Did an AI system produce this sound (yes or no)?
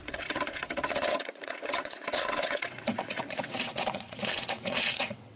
yes